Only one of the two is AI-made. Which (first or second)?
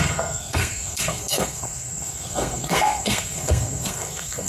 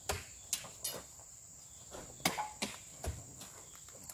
first